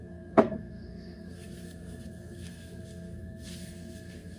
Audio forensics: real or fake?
fake